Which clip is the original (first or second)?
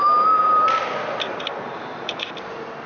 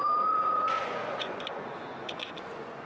first